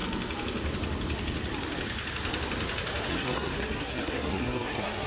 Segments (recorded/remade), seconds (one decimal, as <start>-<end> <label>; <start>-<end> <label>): 0.0-3.1 recorded; 3.1-5.1 remade